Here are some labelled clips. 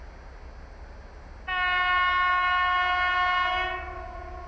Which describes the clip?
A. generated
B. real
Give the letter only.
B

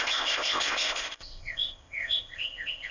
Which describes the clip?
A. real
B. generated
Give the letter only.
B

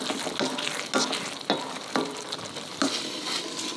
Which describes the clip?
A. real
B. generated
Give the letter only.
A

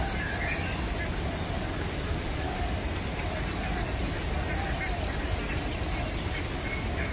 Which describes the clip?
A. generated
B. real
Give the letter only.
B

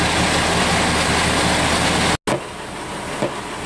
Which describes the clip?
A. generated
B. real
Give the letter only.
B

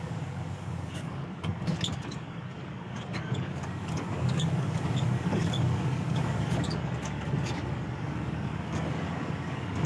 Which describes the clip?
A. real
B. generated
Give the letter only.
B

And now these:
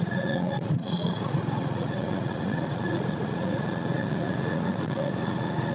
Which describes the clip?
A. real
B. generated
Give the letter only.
B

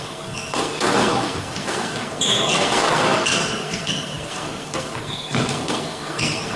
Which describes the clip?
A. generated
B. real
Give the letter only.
A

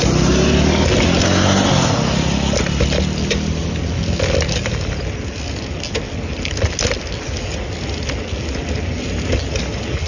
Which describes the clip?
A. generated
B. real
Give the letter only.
B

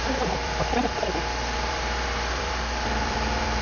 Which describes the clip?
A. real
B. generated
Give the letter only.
B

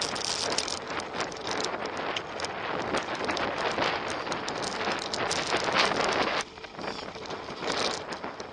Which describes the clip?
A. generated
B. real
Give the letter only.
B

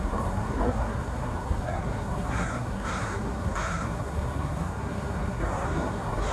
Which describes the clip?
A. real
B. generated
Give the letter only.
B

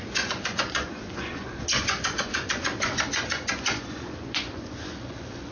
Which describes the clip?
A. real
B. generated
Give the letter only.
B